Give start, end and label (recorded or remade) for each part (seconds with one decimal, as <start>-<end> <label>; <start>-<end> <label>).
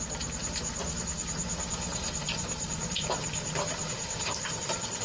0.0-1.9 recorded; 1.9-5.0 remade